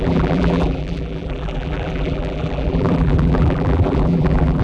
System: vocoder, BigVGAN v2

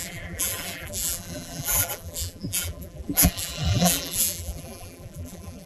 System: vocoder, BigVGAN v2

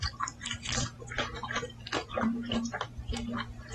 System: vocoder, BigVGAN v2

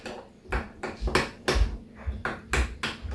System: none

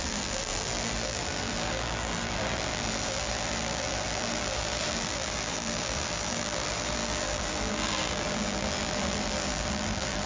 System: vocoder, BigVGAN v2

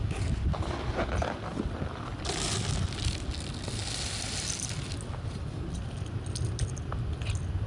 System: none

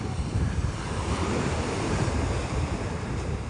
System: vocoder, BigVGAN v2